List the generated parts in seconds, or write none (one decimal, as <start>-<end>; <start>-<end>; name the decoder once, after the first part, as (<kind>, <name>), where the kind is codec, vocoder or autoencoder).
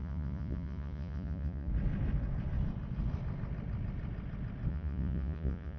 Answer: 0.0-1.7 (vocoder, Vocos); 4.7-5.8